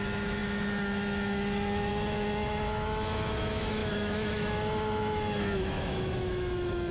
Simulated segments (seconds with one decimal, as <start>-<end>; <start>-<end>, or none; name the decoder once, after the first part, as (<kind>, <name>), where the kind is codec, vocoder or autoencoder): 0.0-6.9 (autoencoder, DAC-VAE)